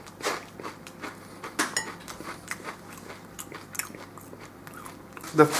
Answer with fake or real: real